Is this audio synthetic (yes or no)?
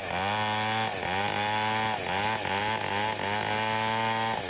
no